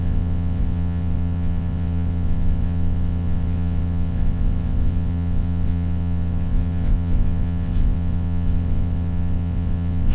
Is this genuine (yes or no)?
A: no